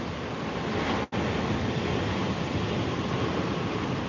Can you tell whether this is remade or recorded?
recorded